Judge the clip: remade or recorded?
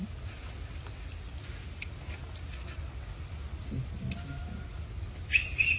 recorded